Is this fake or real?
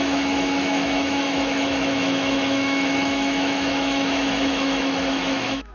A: fake